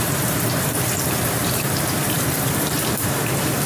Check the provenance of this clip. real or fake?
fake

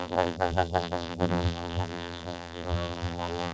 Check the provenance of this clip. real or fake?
fake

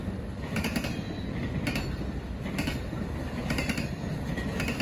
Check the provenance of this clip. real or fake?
real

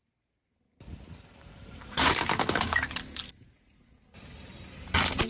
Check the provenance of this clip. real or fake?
real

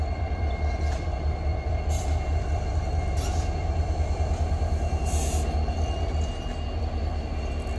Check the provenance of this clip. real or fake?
fake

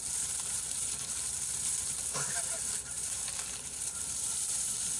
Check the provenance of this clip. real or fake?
fake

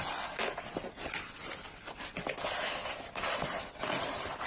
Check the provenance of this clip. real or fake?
real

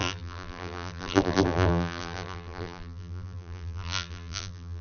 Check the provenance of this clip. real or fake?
fake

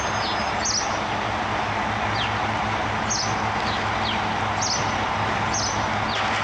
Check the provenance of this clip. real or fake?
real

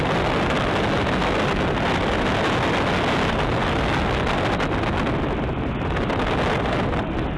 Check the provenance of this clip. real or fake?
real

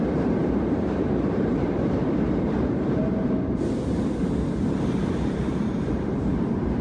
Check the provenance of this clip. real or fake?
fake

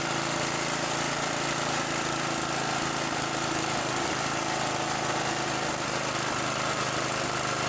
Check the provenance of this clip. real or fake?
real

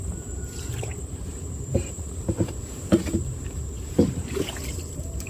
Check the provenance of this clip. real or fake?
fake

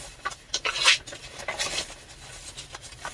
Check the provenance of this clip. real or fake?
fake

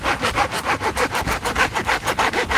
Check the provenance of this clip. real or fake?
real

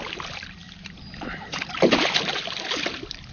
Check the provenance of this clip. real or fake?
fake